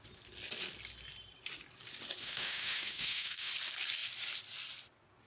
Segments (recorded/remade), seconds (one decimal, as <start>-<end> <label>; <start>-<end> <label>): 0.0-2.2 recorded; 2.2-3.5 remade; 3.5-5.3 recorded